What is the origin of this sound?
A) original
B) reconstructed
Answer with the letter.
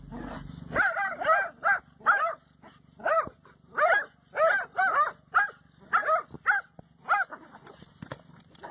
A